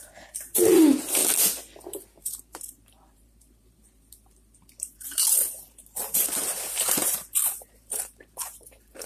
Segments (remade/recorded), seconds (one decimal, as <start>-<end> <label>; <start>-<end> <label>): 0.0-1.2 remade; 1.2-1.9 recorded; 1.9-9.1 remade